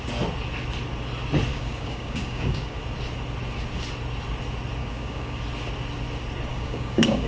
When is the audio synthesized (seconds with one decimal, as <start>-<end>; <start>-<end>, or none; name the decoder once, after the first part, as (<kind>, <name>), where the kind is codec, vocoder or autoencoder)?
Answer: 1.5-2.8 (codec, DAC); 4.8-5.4; 6.5-7.3